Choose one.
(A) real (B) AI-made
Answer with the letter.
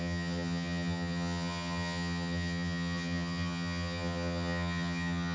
B